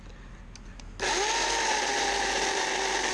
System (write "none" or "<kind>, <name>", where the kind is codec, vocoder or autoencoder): none